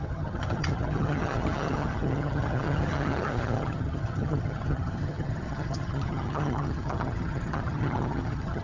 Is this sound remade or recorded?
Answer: remade